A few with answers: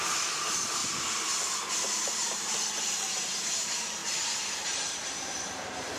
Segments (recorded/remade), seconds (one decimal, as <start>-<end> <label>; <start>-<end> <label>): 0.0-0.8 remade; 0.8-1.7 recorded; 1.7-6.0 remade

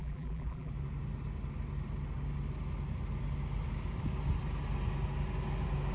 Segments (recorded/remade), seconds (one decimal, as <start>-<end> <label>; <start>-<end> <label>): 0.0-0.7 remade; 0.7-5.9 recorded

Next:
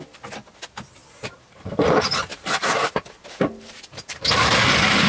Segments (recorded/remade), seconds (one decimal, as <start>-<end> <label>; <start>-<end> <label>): 0.0-1.0 recorded; 1.0-1.7 remade; 1.7-2.3 recorded; 2.3-5.1 remade

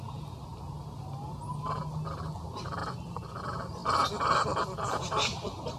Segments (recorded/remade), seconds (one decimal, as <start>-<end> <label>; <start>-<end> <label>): 0.0-5.8 recorded

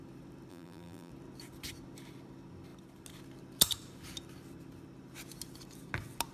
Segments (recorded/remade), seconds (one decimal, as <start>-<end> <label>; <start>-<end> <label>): 0.0-0.5 recorded; 0.5-1.1 remade; 1.1-6.3 recorded

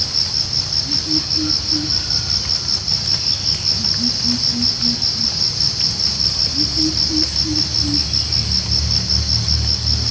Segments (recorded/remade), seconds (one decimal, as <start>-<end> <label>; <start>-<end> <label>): 0.0-10.1 recorded